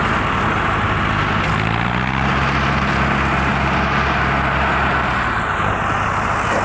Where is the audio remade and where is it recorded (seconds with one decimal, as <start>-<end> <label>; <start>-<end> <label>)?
0.0-6.6 recorded